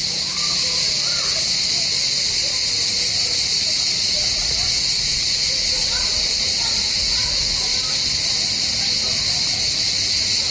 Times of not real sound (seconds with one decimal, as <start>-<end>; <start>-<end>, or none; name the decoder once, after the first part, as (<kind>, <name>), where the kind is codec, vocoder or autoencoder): 3.6-5.6 (vocoder, Vocos); 6.2-7.7; 10.1-10.5

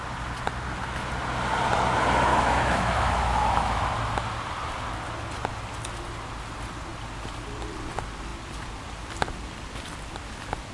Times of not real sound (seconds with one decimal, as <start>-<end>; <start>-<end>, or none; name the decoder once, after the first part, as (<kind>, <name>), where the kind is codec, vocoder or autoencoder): 2.3-3.9 (autoencoder, DAC-VAE)

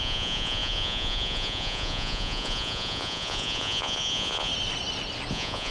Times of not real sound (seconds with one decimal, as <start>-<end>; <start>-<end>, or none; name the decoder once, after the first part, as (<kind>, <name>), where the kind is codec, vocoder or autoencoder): 0.0-4.5 (vocoder, Vocos); 5.3-5.7

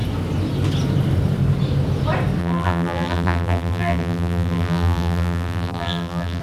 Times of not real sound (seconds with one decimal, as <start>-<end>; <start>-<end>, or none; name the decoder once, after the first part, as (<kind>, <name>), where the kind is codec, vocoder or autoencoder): 2.4-6.4 (vocoder, BigVGAN v2)

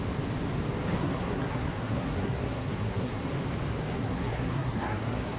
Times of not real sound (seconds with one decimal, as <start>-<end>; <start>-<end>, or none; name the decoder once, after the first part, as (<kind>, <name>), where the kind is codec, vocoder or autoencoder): 1.0-3.2 (codec, SNAC); 3.8-5.4

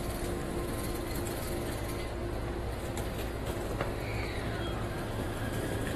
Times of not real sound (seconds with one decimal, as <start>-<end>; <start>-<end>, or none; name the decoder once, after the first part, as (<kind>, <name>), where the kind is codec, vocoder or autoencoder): none